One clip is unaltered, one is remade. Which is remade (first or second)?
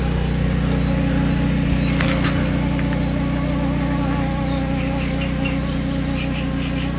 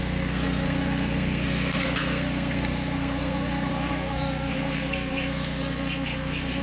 second